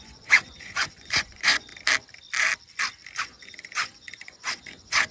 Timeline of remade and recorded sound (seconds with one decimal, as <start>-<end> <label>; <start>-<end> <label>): 0.0-1.7 remade; 1.7-3.2 recorded; 3.2-5.1 remade